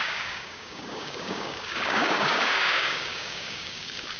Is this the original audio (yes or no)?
no